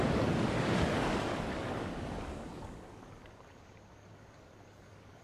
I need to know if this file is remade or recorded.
remade